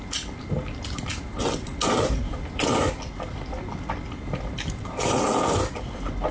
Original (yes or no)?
yes